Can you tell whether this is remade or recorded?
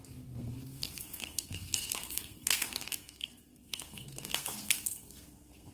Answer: remade